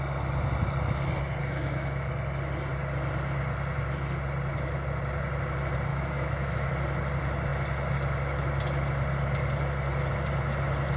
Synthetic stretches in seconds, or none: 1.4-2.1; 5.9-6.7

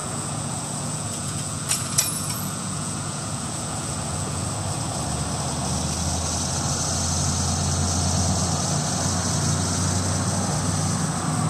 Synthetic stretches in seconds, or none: 0.0-4.5

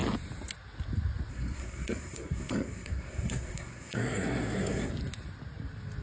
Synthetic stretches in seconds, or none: 1.3-4.9

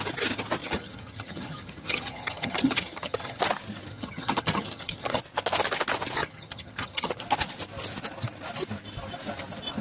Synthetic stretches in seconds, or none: 0.6-3.4; 3.9-5.2; 6.2-7.2

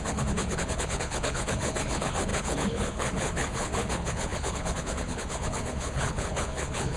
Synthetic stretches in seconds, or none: 0.0-7.0

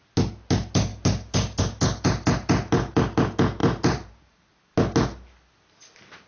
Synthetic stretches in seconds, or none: 3.6-4.5

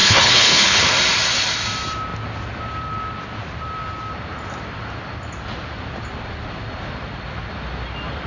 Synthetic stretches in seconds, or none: 0.0-0.8